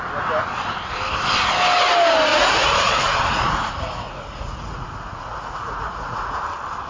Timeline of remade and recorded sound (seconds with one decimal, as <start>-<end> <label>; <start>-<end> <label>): 0.0-2.3 recorded; 2.3-6.4 remade; 6.4-6.9 recorded